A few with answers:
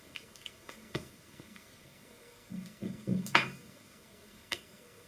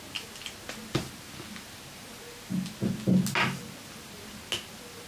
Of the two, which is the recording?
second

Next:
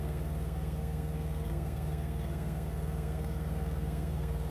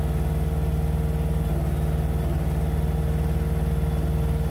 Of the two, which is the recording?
second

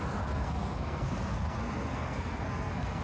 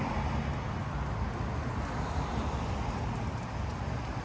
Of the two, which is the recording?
second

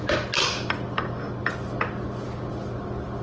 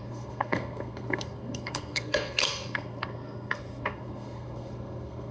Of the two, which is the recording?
first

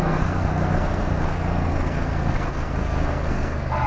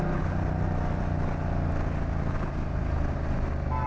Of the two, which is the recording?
second